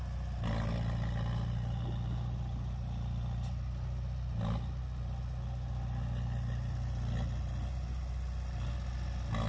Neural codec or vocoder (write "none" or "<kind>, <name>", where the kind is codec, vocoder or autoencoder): none